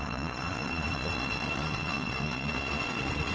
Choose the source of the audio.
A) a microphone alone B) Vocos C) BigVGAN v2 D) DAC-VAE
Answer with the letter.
B